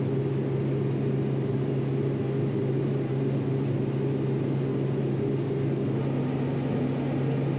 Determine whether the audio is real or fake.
real